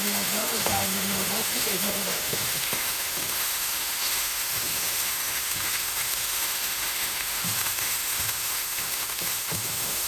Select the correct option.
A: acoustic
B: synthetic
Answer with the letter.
B